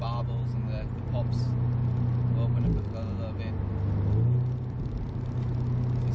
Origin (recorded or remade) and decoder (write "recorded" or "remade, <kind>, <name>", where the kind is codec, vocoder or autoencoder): recorded